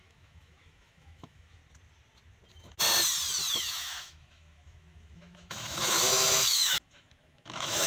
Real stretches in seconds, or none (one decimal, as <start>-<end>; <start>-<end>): 1.6-3.5